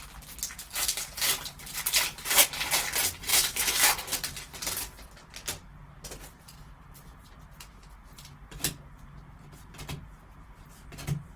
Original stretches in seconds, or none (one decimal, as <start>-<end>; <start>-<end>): 0.0-3.3; 3.9-11.4